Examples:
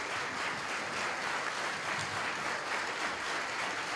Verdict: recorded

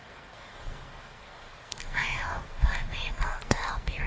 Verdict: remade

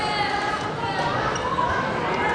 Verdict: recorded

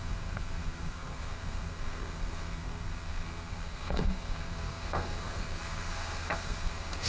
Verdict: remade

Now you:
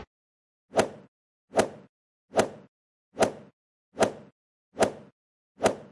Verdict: recorded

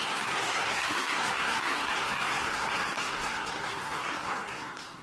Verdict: remade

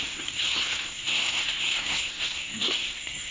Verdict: remade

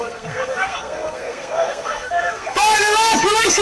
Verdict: remade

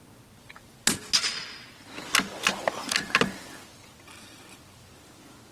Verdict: recorded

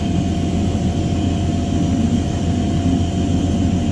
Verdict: recorded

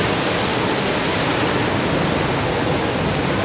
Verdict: recorded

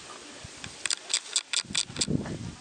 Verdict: recorded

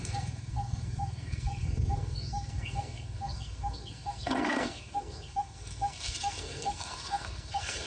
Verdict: remade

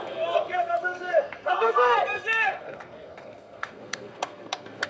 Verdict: remade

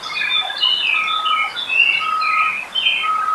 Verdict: recorded